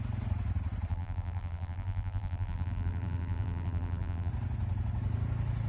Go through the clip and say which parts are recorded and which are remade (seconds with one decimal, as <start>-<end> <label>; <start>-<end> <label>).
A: 0.0-0.9 recorded; 0.9-4.3 remade; 4.3-5.7 recorded